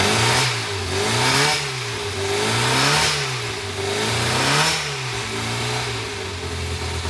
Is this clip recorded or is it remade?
recorded